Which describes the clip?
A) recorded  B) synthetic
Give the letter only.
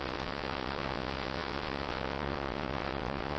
B